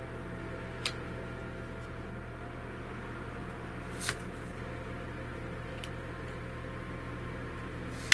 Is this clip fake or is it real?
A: real